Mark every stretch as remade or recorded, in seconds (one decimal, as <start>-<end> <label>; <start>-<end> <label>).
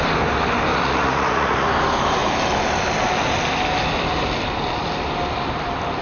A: 0.0-0.7 recorded; 0.7-1.7 remade; 1.7-6.0 recorded